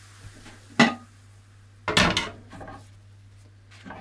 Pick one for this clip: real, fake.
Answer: real